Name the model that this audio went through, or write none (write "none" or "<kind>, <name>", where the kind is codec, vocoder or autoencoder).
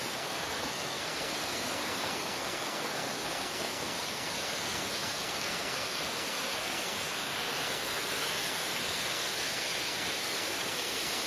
codec, SNAC